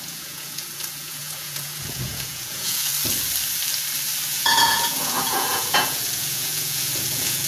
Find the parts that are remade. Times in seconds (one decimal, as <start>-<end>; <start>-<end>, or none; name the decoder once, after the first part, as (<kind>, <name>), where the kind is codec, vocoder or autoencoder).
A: 0.0-2.9 (vocoder, Vocos); 4.3-7.5